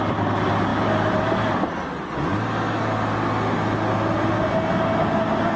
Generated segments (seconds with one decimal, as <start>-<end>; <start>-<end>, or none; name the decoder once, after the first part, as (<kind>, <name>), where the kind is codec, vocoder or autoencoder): none